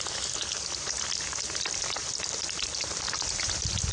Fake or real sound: real